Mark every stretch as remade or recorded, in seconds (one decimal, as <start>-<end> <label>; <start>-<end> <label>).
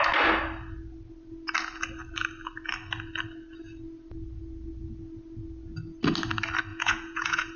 0.0-6.7 recorded; 6.7-7.6 remade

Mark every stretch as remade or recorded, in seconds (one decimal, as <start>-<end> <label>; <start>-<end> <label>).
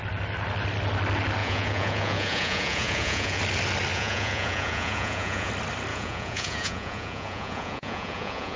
0.0-1.4 recorded; 1.4-3.4 remade; 3.4-3.9 recorded; 3.9-5.5 remade; 5.5-5.9 recorded; 5.9-8.6 remade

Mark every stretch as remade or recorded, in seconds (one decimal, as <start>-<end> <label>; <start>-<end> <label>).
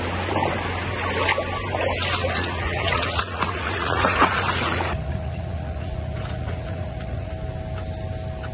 0.0-2.2 recorded; 2.2-7.3 remade; 7.3-8.5 recorded